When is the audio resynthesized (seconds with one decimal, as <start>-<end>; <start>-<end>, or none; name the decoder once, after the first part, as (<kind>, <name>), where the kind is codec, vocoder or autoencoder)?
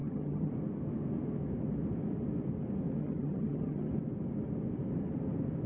0.0-0.5 (vocoder, HiFi-GAN); 3.0-3.9